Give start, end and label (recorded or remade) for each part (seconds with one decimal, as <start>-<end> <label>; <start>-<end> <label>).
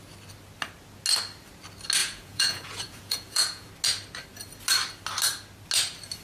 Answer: 0.0-2.0 recorded; 2.0-3.7 remade; 3.7-6.2 recorded